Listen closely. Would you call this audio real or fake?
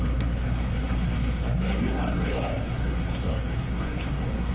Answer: fake